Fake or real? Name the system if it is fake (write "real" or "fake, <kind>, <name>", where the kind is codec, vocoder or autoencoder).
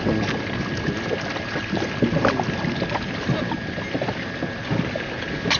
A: real